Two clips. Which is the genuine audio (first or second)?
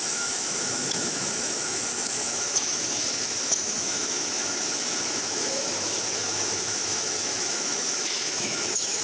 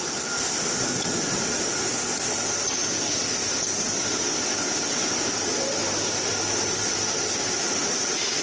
second